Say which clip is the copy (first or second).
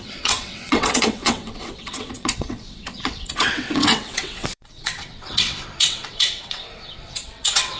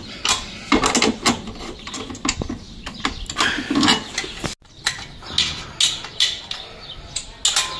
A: first